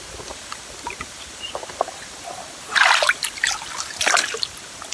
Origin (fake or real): real